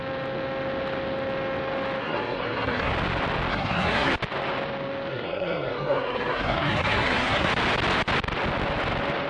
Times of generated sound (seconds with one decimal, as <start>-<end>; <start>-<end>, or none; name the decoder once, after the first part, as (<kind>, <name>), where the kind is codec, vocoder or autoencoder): 2.0-2.9 (codec, SNAC); 3.5-4.1; 5.1-7.5